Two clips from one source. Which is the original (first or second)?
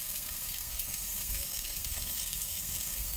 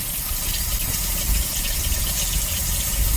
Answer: second